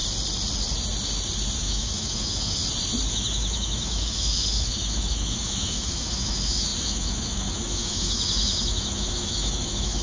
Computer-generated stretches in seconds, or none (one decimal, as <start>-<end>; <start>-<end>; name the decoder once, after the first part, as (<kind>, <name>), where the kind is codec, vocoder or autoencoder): 1.6-2.6 (autoencoder, DAC-VAE); 3.1-10.0